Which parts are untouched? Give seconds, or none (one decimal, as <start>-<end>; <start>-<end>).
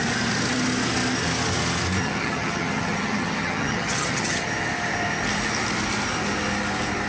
0.0-2.0; 4.4-7.1